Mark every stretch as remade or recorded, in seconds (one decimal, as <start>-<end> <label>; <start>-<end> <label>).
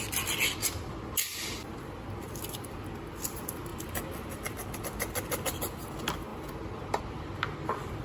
0.0-8.0 recorded